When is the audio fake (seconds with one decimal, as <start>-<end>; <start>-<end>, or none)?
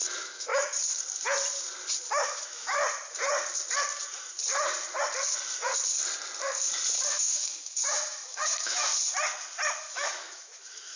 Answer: 0.0-0.5; 2.1-2.8; 7.1-8.9; 9.8-11.0